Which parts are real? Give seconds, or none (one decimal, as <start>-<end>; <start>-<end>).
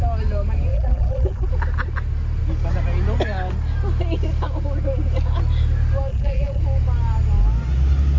0.0-0.7; 1.5-6.1; 6.6-8.2